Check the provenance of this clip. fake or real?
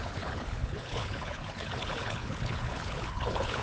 fake